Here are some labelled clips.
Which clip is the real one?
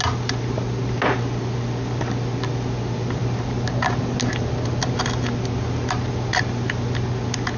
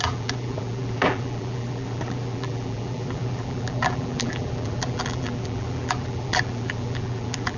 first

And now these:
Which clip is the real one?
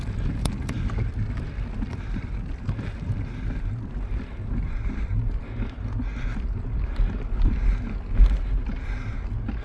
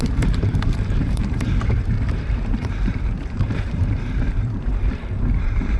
first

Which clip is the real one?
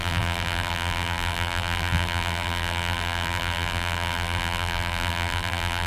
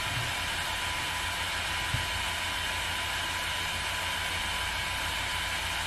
second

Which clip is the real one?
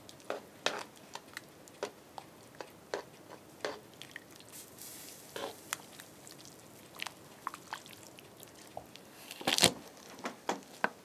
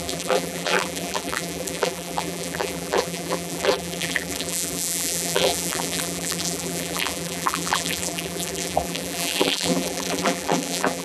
first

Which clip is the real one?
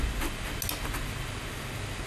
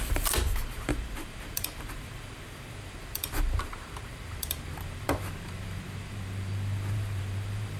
first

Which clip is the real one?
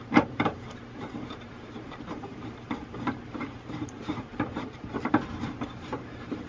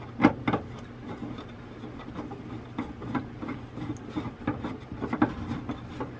second